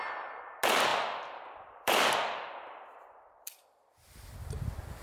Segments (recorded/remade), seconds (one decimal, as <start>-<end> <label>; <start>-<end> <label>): 0.0-0.9 recorded; 0.9-3.9 remade; 3.9-5.0 recorded